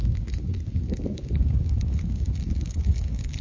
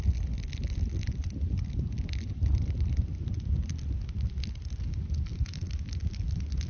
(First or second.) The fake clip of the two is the first